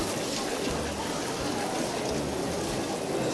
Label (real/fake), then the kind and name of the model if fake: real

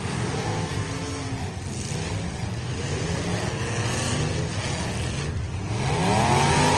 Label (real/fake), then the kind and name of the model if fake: real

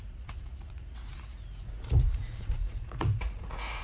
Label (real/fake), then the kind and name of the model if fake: fake, vocoder, Vocos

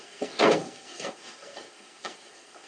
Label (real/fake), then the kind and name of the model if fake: fake, codec, SNAC